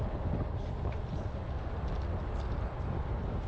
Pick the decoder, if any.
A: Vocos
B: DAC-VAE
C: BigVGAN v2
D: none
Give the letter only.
D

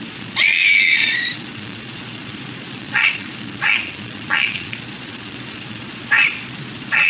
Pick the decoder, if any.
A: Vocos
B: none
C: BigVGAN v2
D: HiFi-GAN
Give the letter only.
A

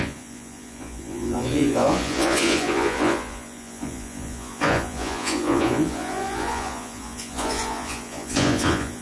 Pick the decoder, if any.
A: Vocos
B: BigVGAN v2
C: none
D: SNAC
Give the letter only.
A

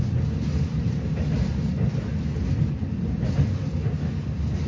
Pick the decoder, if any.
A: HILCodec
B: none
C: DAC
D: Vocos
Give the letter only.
B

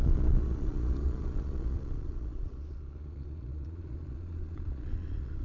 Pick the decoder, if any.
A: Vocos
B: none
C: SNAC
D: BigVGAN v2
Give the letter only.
A